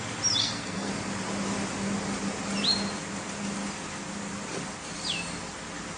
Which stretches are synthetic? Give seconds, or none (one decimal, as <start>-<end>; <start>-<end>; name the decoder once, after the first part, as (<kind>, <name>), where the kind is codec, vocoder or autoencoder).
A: 0.4-0.9 (codec, SNAC)